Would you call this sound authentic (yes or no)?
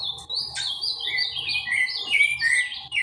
yes